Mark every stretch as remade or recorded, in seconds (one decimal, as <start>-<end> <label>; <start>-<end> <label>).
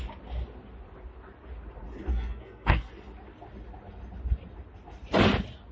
0.0-2.1 recorded; 2.1-2.9 remade; 2.9-5.7 recorded